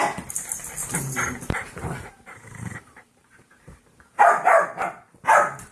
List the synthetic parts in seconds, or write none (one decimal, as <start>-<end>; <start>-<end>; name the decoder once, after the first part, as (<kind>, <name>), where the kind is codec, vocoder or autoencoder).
0.8-4.2 (vocoder, BigVGAN v2)